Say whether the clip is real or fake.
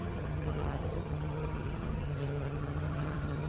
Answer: fake